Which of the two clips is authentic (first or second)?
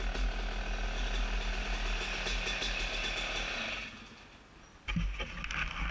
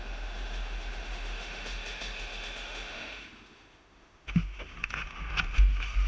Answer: first